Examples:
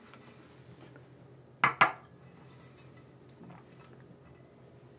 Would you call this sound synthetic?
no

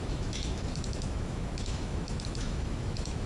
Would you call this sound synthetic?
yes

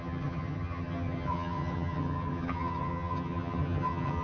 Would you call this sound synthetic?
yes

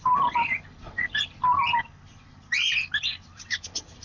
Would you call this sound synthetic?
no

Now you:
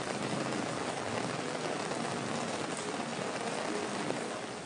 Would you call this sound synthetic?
no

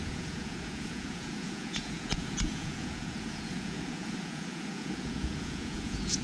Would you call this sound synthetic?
yes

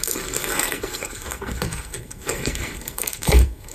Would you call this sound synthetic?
yes